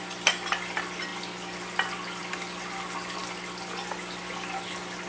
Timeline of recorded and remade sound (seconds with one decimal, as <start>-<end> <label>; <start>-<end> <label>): 0.0-5.1 recorded